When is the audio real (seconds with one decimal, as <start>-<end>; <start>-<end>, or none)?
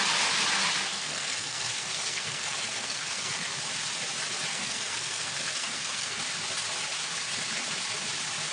0.0-0.9; 3.6-4.5; 6.2-8.5